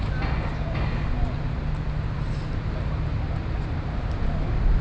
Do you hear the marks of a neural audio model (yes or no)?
no